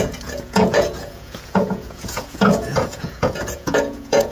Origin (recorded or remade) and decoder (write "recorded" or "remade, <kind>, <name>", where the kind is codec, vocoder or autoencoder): remade, vocoder, Vocos